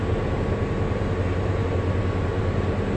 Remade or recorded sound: recorded